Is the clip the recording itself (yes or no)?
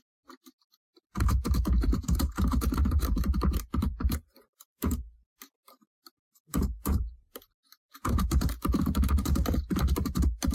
no